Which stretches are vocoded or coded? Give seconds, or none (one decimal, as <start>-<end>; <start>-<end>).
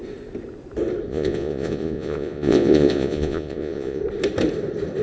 1.1-4.0